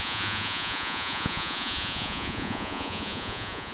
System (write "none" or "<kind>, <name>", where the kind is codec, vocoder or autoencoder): vocoder, Vocos